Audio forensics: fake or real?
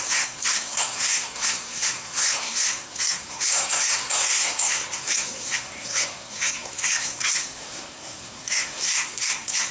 fake